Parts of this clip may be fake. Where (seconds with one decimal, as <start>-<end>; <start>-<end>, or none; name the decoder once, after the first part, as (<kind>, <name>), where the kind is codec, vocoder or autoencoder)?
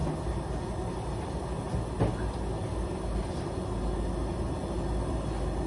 none